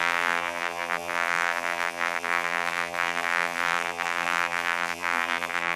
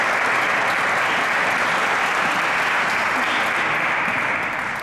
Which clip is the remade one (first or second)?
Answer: first